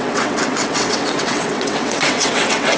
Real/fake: fake